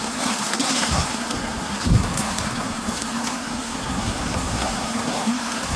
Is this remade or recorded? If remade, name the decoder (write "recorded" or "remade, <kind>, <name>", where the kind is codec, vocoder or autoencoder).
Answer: remade, codec, SNAC